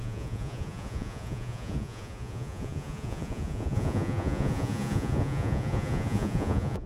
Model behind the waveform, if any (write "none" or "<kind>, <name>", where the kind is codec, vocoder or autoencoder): vocoder, Vocos